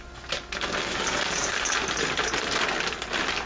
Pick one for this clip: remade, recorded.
recorded